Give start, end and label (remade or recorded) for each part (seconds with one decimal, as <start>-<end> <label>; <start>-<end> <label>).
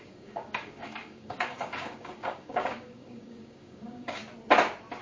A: 0.0-4.2 remade; 4.2-5.0 recorded